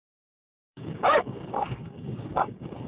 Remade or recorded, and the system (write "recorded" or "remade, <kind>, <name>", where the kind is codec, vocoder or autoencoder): remade, codec, DAC